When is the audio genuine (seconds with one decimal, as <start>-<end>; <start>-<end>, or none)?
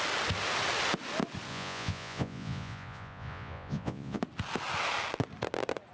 0.0-1.5; 4.2-5.9